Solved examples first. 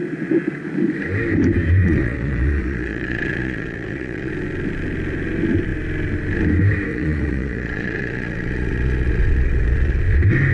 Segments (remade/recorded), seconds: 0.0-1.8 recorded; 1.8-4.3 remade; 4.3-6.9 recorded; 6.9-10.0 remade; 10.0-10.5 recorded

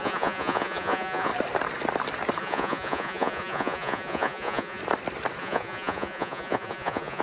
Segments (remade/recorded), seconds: 0.0-1.3 remade; 1.3-2.4 recorded; 2.4-4.8 remade; 4.8-5.4 recorded; 5.4-7.2 remade

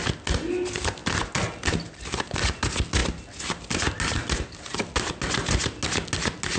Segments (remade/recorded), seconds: 0.0-6.6 recorded

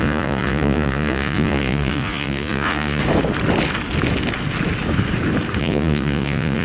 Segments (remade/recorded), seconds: 0.0-3.0 remade; 3.0-5.6 recorded; 5.6-6.6 remade

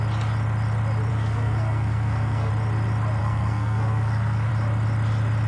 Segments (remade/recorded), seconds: 0.0-1.1 recorded; 1.1-2.5 remade; 2.5-3.2 recorded; 3.2-4.5 remade; 4.5-5.5 recorded

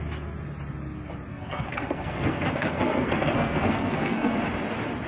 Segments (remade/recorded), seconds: 0.0-1.3 recorded; 1.3-4.4 remade; 4.4-5.1 recorded